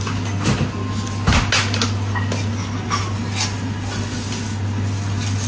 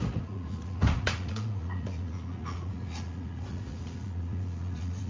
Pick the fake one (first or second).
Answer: second